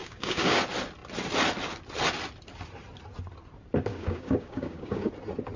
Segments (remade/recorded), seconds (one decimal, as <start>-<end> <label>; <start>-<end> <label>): 0.0-0.6 remade; 0.6-3.9 recorded; 3.9-5.1 remade; 5.1-5.6 recorded